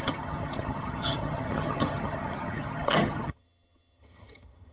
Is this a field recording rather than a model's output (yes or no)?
no